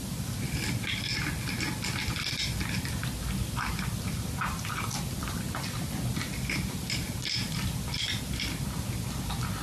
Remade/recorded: recorded